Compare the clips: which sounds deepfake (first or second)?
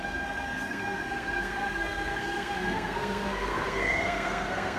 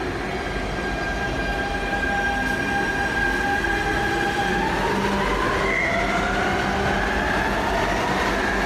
first